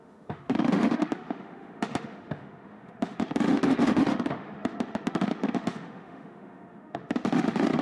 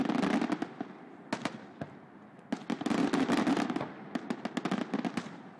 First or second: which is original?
second